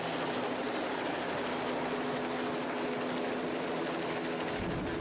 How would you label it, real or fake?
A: real